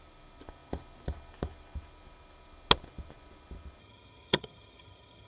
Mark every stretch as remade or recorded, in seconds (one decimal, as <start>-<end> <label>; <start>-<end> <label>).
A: 0.0-3.8 recorded; 3.8-5.3 remade